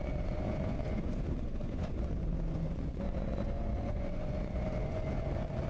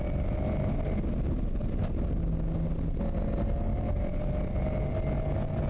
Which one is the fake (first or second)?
first